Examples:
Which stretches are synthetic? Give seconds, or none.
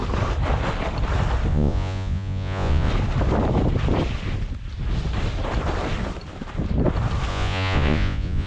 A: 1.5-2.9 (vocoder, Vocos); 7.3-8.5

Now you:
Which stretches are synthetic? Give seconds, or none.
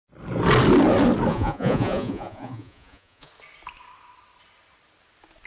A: 1.3-3.3 (vocoder, Vocos)